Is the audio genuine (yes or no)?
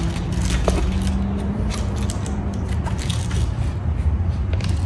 yes